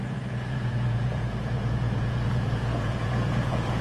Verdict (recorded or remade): remade